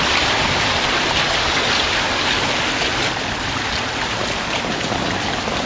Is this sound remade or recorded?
recorded